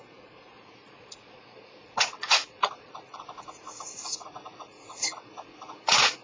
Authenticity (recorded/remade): remade